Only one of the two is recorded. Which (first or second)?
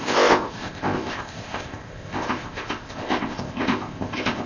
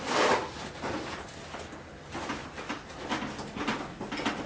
second